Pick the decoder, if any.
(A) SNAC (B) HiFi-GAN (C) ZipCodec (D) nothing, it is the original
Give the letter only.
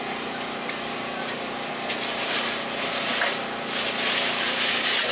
D